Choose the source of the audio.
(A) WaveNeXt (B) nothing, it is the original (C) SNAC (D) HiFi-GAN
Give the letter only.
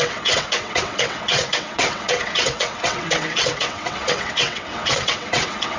A